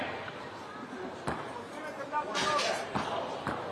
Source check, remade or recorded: recorded